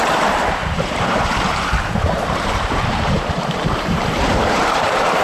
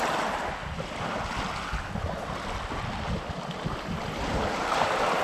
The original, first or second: second